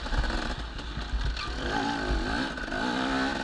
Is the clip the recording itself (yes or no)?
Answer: yes